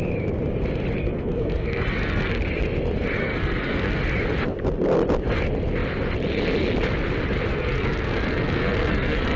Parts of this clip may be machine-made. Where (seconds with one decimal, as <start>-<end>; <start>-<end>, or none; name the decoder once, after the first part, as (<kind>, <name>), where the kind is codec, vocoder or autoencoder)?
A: 1.0-2.4 (codec, SNAC); 3.2-4.0; 7.5-9.4